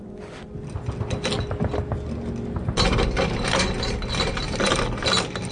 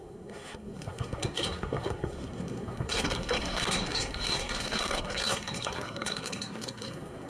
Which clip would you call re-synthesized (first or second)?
second